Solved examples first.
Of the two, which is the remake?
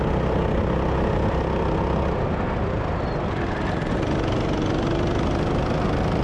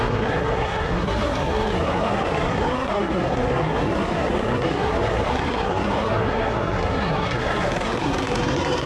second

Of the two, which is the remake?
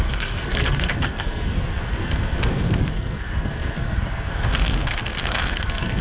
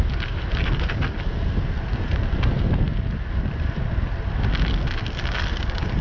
first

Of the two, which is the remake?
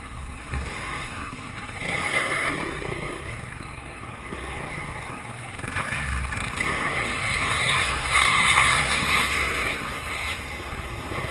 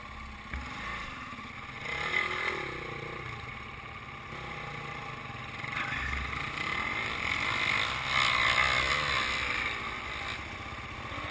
first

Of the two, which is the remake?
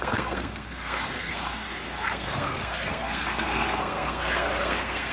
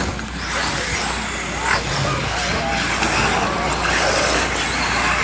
first